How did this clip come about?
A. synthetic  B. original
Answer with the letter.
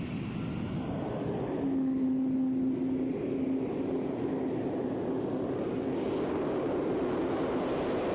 B